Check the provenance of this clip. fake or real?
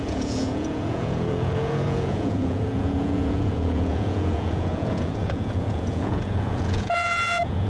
fake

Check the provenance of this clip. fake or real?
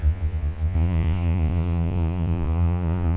fake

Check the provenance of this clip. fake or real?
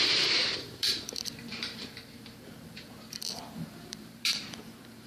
fake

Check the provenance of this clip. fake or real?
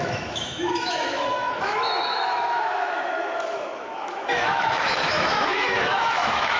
fake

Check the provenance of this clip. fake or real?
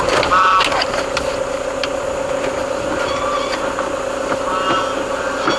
real